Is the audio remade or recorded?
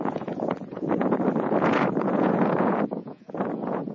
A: remade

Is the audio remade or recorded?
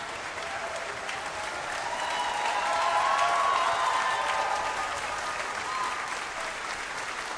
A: recorded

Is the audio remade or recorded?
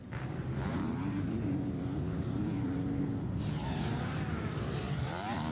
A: remade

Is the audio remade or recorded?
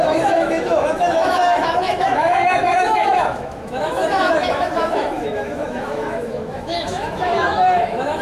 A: remade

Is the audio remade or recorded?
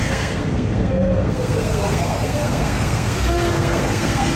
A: remade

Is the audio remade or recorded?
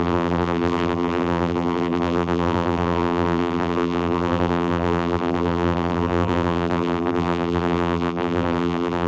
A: remade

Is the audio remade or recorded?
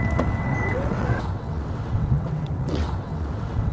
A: remade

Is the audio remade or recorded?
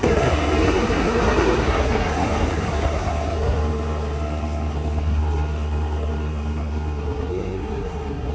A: remade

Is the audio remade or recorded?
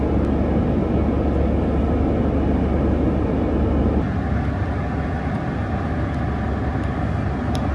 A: recorded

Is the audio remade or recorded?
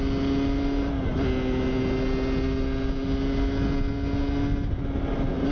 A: recorded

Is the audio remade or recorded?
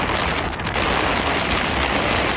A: recorded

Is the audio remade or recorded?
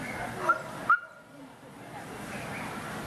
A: recorded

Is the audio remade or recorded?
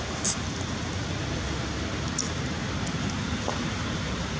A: recorded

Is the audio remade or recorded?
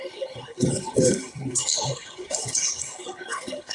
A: remade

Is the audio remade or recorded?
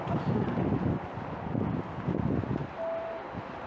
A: recorded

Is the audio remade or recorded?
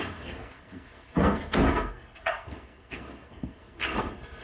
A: remade